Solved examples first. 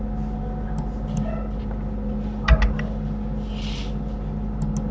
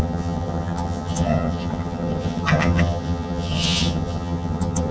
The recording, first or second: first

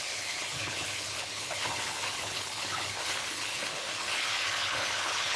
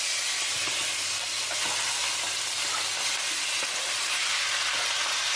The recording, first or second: second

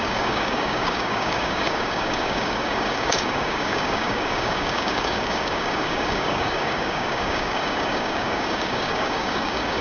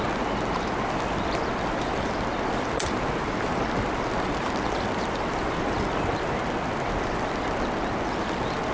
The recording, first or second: second